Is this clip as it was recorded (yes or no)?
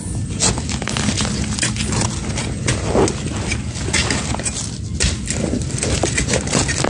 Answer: yes